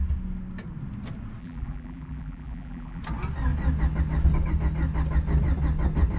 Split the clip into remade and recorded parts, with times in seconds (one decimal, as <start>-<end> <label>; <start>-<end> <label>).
0.0-1.4 recorded; 1.4-3.0 remade; 3.0-6.2 recorded